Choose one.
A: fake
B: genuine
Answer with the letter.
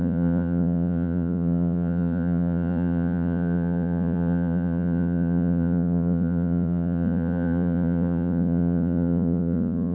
A